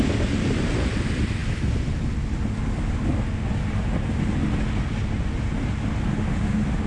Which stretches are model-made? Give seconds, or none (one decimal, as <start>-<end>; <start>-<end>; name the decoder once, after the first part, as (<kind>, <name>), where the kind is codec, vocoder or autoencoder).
none